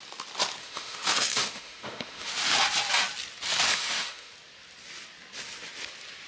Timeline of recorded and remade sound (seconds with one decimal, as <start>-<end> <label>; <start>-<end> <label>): 0.0-0.6 recorded; 0.6-2.3 remade; 2.3-3.7 recorded; 3.7-4.3 remade; 4.3-6.3 recorded